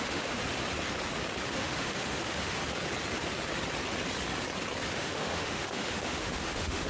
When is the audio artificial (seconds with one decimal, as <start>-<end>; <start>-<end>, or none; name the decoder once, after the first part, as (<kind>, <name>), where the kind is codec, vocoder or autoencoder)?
0.0-0.4 (autoencoder, DAC-VAE); 1.5-2.6; 4.9-6.9